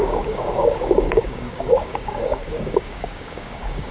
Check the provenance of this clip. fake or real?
fake